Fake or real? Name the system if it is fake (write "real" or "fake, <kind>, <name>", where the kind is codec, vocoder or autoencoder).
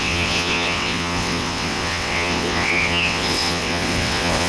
fake, vocoder, WaveNeXt